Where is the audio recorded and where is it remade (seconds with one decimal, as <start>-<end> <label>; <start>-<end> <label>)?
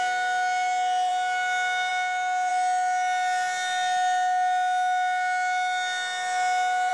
0.0-6.9 recorded